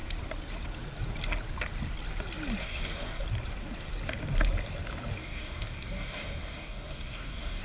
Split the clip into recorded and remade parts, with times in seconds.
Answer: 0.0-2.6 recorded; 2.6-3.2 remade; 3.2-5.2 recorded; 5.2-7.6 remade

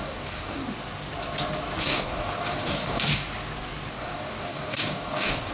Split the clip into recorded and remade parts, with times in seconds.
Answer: 0.0-0.6 remade; 0.6-1.8 recorded; 1.8-3.3 remade; 3.3-3.9 recorded; 3.9-5.5 remade

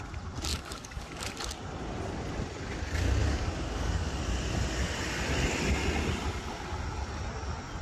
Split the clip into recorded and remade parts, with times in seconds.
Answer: 0.0-0.5 recorded; 0.5-1.3 remade; 1.3-3.2 recorded; 3.2-4.2 remade; 4.2-7.8 recorded

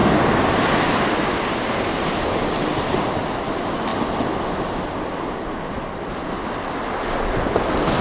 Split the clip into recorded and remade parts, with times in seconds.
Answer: 0.0-8.0 recorded

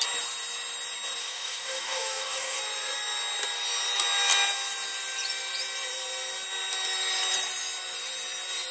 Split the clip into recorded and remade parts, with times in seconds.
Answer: 0.0-1.2 recorded; 1.2-2.6 remade; 2.6-8.7 recorded